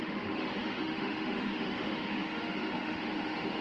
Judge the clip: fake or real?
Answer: fake